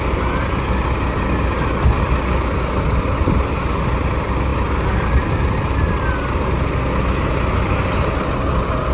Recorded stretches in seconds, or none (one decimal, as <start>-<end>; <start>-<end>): 0.0-8.9